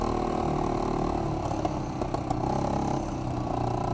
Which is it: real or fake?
real